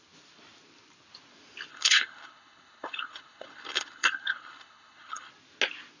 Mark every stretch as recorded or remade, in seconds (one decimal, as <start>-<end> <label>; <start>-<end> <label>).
0.0-1.7 recorded; 1.7-5.3 remade; 5.3-6.0 recorded